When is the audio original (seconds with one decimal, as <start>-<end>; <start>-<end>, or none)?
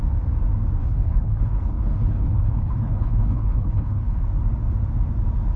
0.0-0.8; 4.2-5.6